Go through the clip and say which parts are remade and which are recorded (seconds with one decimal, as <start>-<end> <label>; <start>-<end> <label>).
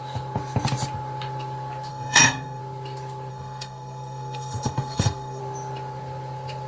0.0-1.9 recorded; 1.9-2.6 remade; 2.6-3.3 recorded; 3.3-5.4 remade; 5.4-6.7 recorded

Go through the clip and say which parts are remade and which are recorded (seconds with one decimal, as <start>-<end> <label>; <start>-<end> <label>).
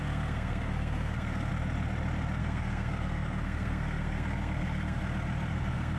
0.0-1.5 remade; 1.5-2.4 recorded; 2.4-5.0 remade; 5.0-5.5 recorded; 5.5-6.0 remade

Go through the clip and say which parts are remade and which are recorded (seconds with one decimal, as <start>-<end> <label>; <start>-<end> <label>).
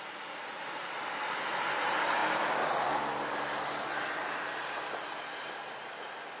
0.0-6.4 recorded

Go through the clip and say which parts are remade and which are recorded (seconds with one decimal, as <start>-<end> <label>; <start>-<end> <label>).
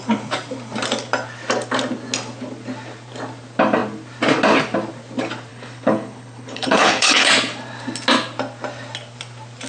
0.0-5.5 recorded; 5.5-7.3 remade; 7.3-9.7 recorded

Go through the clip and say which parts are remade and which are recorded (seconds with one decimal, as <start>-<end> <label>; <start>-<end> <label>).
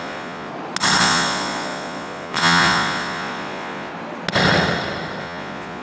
0.0-0.5 remade; 0.5-1.0 recorded; 1.0-3.9 remade; 3.9-5.2 recorded; 5.2-5.8 remade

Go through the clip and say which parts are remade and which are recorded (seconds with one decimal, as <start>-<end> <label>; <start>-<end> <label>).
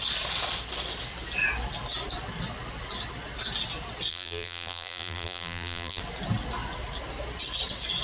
0.0-4.1 recorded; 4.1-6.0 remade; 6.0-8.0 recorded